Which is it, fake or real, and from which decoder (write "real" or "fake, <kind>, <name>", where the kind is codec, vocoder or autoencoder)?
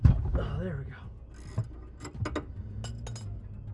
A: real